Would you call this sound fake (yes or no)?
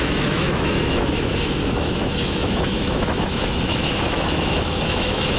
yes